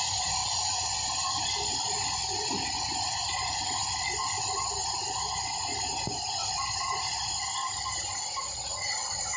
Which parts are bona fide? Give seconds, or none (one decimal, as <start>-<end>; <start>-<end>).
0.4-1.0